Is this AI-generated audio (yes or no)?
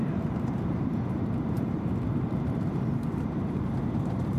yes